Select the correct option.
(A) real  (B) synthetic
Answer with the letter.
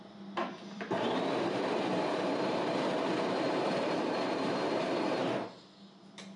B